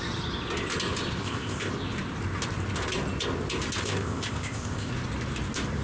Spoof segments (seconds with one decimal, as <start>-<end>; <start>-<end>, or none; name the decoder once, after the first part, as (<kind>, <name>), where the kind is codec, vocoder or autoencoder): 1.2-1.7 (codec, ZipCodec); 3.8-4.9